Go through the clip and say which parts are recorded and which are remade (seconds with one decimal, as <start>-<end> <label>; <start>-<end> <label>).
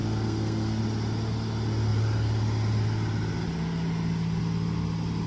0.0-0.8 remade; 0.8-5.3 recorded